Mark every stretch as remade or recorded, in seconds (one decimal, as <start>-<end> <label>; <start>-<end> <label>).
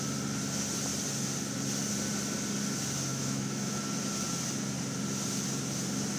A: 0.0-3.1 recorded; 3.1-3.8 remade; 3.8-6.2 recorded